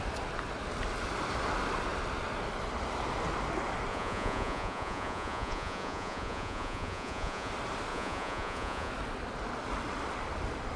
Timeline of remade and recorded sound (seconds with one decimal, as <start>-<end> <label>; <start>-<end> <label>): 0.0-3.9 recorded; 3.9-7.5 remade; 7.5-7.9 recorded; 7.9-8.9 remade; 8.9-10.8 recorded

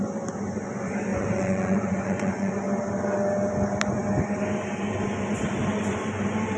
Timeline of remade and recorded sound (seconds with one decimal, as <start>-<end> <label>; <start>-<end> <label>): 0.0-1.1 recorded; 1.1-2.5 remade; 2.5-6.6 recorded